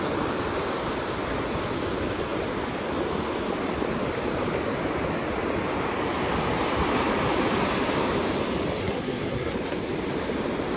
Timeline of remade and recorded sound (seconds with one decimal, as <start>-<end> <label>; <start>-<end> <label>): 0.0-8.8 recorded; 8.8-9.5 remade; 9.5-10.8 recorded